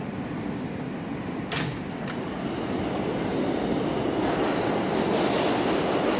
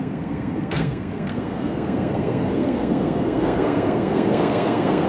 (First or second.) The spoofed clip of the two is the second